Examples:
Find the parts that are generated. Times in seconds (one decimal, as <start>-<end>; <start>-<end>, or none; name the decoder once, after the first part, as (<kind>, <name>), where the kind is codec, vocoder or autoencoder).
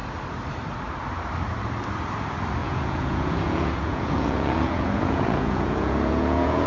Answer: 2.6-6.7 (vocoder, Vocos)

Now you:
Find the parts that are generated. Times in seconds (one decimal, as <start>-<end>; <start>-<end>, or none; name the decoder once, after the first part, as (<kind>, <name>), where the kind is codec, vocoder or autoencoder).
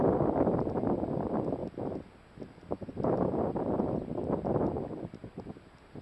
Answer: none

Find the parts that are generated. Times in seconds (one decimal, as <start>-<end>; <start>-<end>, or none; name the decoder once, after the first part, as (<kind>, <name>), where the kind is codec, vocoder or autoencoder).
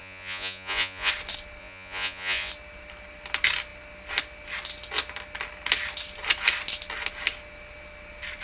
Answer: 0.0-1.1 (vocoder, Vocos); 1.6-2.5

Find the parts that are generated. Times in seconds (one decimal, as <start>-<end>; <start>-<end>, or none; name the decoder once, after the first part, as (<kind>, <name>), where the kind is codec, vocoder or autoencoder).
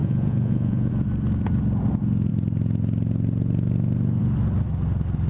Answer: 0.0-0.9 (vocoder, Vocos)